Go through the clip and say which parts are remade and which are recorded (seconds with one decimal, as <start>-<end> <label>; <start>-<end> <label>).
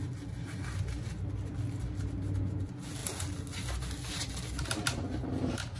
0.0-5.8 recorded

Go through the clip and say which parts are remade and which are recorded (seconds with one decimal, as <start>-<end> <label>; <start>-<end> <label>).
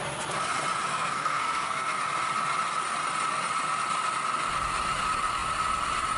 0.0-0.9 recorded; 0.9-2.0 remade; 2.0-6.2 recorded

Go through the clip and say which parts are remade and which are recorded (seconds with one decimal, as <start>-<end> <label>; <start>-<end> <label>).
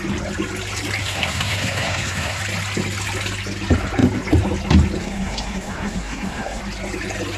0.0-1.0 recorded; 1.0-2.4 remade; 2.4-5.0 recorded; 5.0-6.6 remade; 6.6-7.4 recorded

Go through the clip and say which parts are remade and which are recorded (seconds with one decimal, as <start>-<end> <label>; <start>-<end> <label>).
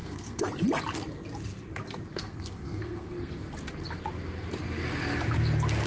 0.0-0.5 remade; 0.5-2.2 recorded; 2.2-3.3 remade; 3.3-5.9 recorded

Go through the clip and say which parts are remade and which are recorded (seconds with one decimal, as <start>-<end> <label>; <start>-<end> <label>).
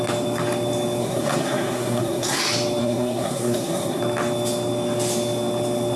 0.0-1.0 recorded; 1.0-2.4 remade; 2.4-2.8 recorded; 2.8-4.0 remade; 4.0-6.0 recorded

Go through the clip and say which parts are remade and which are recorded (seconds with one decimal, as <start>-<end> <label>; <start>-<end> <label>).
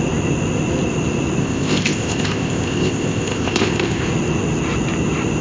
0.0-1.4 recorded; 1.4-4.1 remade; 4.1-5.4 recorded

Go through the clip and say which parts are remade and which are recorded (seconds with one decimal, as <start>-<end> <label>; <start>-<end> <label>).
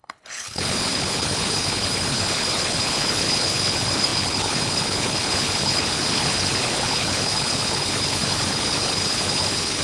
0.0-9.8 remade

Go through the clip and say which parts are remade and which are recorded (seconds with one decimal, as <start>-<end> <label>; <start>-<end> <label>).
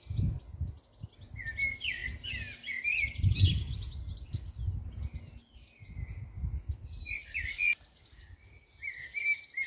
0.0-9.7 recorded